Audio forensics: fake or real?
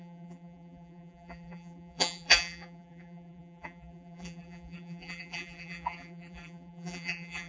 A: fake